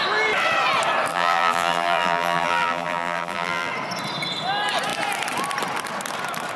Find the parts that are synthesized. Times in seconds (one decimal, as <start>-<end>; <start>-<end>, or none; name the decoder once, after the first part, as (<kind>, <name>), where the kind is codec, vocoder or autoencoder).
1.1-3.7 (vocoder, BigVGAN v2)